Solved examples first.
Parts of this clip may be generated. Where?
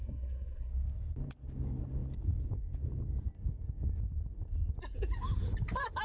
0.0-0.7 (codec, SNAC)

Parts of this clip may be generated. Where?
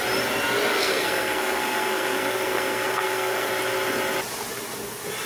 0.7-3.5 (codec, SNAC)